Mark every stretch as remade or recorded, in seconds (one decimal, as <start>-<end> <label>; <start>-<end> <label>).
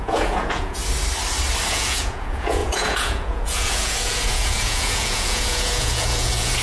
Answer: 0.0-0.8 remade; 0.8-1.7 recorded; 1.7-6.6 remade